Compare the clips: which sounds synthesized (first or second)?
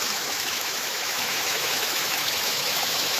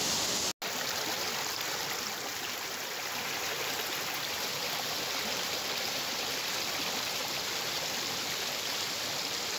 first